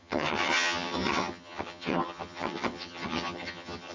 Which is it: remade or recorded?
remade